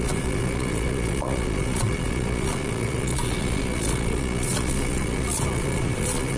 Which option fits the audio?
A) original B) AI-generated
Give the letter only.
B